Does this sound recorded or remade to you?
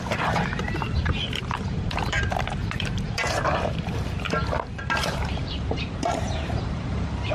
remade